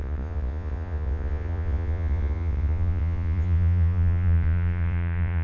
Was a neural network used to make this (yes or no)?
yes